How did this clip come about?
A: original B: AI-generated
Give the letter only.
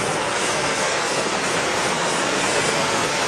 B